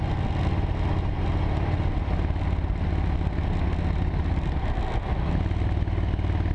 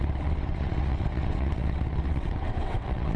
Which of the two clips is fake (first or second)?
second